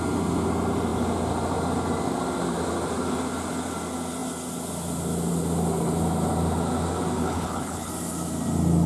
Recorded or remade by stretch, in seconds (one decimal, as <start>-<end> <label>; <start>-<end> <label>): 0.0-7.2 recorded; 7.2-7.9 remade; 7.9-8.9 recorded